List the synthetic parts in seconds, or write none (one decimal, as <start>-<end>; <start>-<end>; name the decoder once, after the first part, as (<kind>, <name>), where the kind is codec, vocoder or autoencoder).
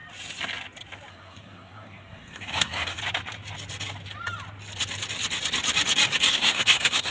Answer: 1.1-3.0 (codec, SNAC); 6.3-7.1